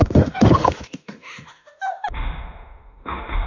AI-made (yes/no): yes